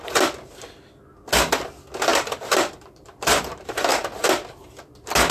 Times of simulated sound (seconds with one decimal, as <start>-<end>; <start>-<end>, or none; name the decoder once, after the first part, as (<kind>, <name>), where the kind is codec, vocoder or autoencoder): 2.1-3.4 (vocoder, BigVGAN v2)